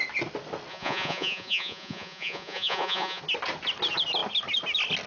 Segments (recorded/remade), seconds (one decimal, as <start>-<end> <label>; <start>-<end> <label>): 0.0-0.7 recorded; 0.7-3.2 remade; 3.2-5.1 recorded